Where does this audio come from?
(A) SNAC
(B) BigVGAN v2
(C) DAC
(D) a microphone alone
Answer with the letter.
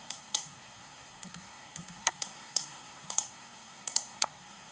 A